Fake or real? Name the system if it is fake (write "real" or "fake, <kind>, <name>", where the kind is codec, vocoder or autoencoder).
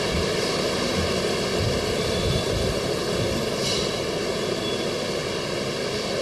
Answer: real